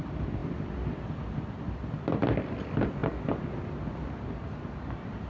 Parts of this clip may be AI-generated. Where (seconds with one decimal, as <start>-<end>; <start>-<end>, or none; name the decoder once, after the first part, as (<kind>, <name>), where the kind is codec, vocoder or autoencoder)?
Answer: 0.0-3.0 (vocoder, BigVGAN v2)